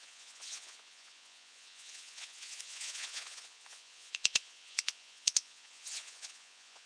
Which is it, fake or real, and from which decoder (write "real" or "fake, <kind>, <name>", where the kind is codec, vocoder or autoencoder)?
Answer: fake, vocoder, Vocos